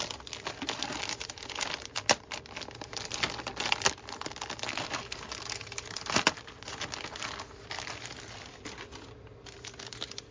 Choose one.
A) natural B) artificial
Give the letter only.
A